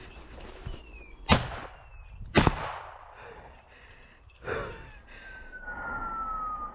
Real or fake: real